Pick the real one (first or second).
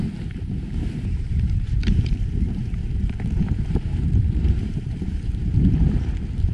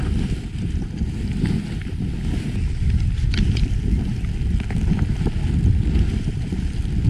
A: second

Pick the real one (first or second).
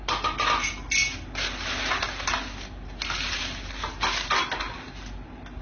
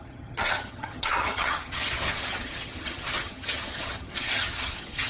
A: first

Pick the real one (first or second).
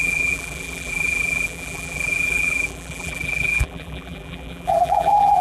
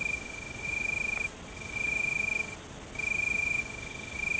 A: second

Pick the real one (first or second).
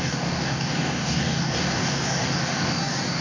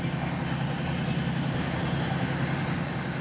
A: second